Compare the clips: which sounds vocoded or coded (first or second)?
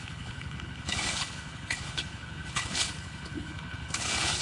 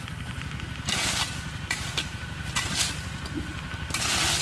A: first